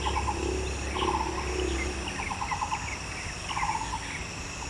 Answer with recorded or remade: recorded